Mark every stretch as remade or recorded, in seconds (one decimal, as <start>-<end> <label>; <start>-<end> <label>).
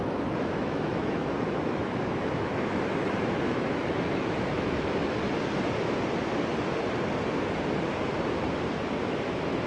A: 0.0-5.1 remade; 5.1-9.7 recorded